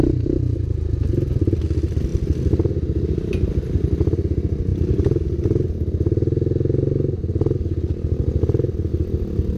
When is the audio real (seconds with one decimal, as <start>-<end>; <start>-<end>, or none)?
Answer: 0.0-9.6